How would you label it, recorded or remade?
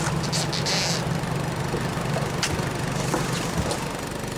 recorded